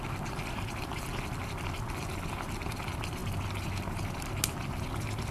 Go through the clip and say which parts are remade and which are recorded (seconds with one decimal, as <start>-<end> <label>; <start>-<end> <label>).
0.0-5.3 recorded